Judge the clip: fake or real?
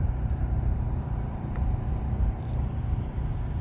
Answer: fake